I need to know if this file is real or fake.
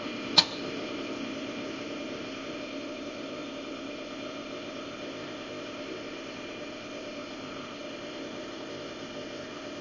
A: fake